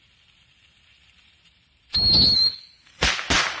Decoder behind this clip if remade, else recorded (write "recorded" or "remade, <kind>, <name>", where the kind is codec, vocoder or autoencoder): recorded